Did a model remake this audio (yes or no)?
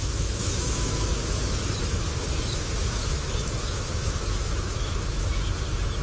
yes